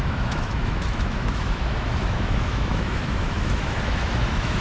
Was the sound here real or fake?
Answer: fake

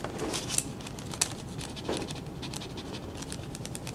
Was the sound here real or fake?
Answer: real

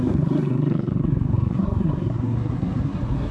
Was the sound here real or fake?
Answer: fake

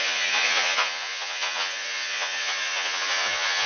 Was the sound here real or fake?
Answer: fake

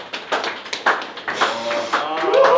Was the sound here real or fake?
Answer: real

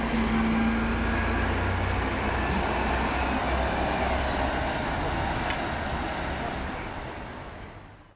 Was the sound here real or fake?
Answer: real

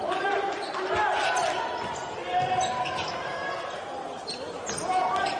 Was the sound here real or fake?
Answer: real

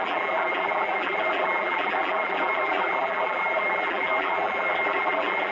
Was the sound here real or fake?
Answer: fake